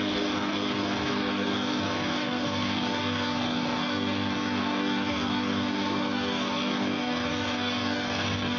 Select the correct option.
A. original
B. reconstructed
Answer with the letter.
B